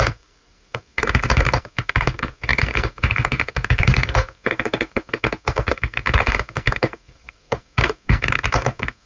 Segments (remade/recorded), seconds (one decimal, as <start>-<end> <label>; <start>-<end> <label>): 0.0-9.1 remade